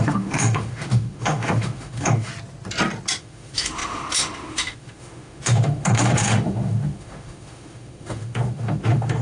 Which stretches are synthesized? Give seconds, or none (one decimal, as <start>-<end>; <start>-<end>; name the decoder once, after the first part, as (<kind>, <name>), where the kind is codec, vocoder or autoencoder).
0.0-2.3 (autoencoder, DAC-VAE); 3.2-9.2